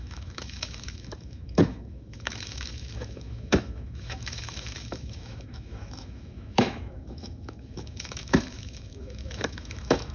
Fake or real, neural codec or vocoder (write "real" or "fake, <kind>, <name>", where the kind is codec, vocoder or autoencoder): fake, autoencoder, DAC-VAE